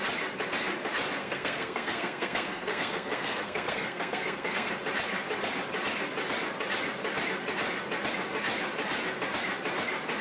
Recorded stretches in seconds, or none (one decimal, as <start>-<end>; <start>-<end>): 0.0-1.2; 4.7-10.2